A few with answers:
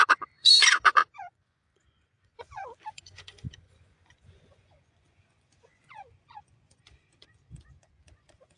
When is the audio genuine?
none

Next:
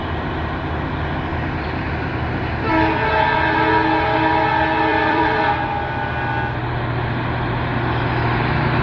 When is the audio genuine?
0.0-1.3; 1.9-4.9; 5.5-8.8

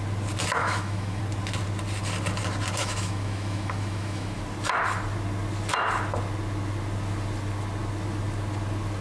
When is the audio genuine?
0.0-0.6; 1.2-2.8; 4.4-9.0